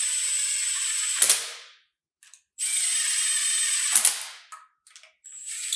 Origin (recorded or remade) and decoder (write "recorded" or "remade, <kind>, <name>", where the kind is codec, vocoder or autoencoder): recorded